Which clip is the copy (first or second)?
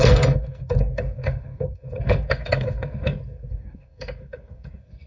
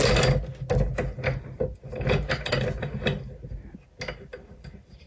first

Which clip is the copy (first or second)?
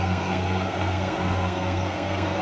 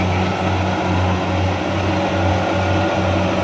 first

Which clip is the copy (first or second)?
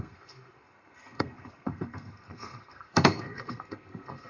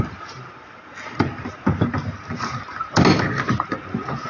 first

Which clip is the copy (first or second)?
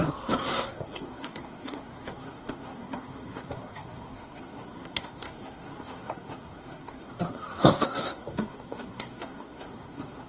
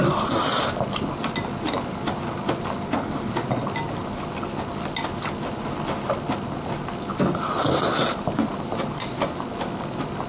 first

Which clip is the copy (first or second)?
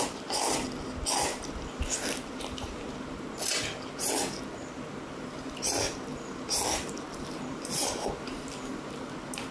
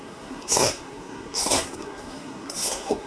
second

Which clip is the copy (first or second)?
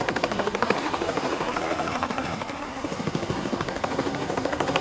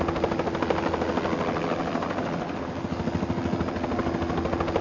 first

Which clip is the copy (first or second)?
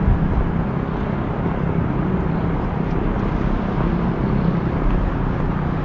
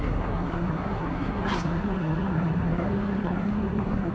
second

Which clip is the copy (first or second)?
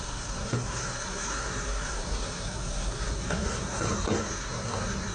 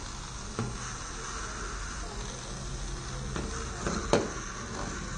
first